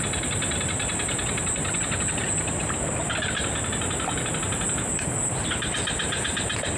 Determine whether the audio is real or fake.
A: real